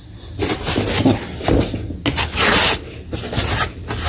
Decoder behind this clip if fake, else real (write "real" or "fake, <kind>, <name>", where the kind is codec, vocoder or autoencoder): real